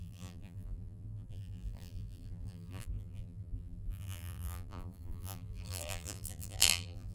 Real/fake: fake